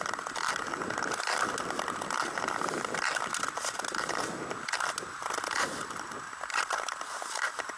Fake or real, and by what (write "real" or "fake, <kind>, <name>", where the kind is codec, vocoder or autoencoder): real